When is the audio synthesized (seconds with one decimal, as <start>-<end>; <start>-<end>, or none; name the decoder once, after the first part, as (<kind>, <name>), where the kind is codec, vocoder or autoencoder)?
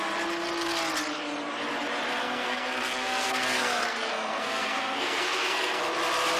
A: 2.2-5.8 (codec, SNAC)